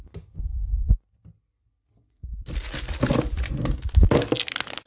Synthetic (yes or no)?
no